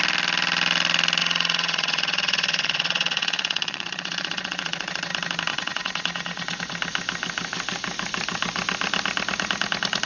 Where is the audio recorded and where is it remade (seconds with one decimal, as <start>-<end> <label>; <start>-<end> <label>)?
0.0-1.2 recorded; 1.2-5.1 remade; 5.1-5.5 recorded; 5.5-6.6 remade; 6.6-10.1 recorded

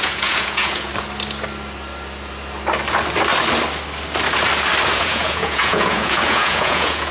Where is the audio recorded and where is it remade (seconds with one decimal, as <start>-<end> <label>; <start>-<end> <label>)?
0.0-0.9 remade; 0.9-4.9 recorded; 4.9-7.1 remade

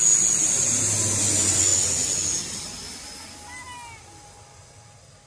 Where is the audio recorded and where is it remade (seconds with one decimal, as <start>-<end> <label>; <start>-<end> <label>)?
0.0-5.3 recorded

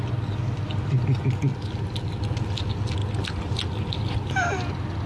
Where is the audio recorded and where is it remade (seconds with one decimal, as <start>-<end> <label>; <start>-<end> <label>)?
0.0-5.1 recorded

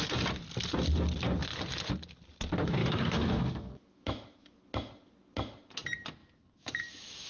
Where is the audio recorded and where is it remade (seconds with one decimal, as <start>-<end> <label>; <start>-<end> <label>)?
0.0-2.8 recorded; 2.8-4.6 remade; 4.6-6.2 recorded; 6.2-7.3 remade

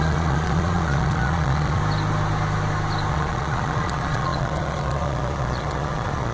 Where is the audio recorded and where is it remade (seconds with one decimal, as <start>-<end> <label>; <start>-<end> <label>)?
0.0-1.8 remade; 1.8-3.1 recorded; 3.1-6.3 remade